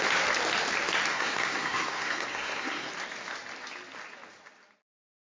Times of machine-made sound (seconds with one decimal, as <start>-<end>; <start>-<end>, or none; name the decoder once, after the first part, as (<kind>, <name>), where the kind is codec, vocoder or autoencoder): 1.1-2.9 (codec, SNAC)